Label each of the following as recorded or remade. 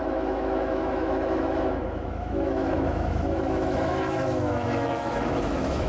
remade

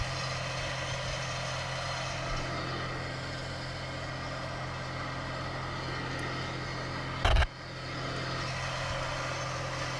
recorded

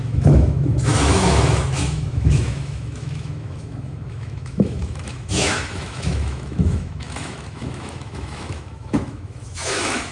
remade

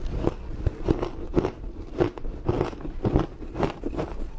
recorded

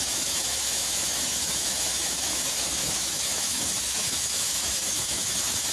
remade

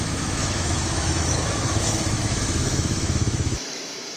remade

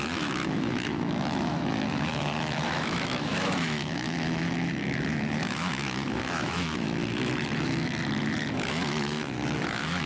remade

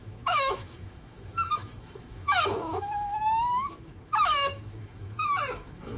remade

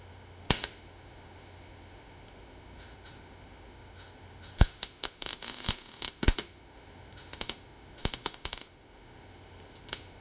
remade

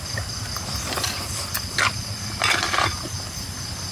recorded